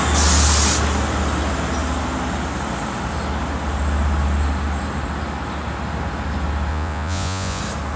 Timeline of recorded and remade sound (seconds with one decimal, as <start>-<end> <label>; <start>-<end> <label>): 0.0-6.7 recorded; 6.7-7.6 remade; 7.6-8.0 recorded